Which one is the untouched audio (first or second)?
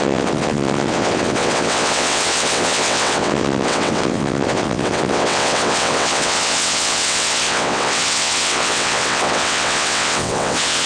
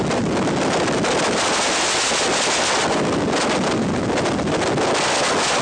second